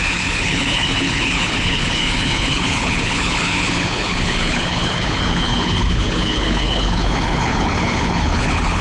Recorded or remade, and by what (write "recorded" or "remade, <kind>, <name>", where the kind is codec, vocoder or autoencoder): remade, codec, HILCodec